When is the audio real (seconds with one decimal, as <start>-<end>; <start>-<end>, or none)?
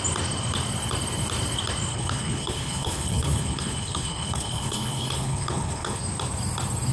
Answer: 0.0-1.9; 6.0-6.9